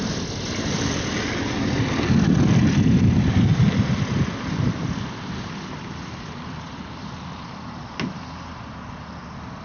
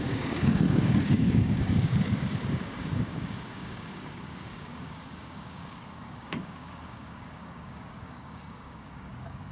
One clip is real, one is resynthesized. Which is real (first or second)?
first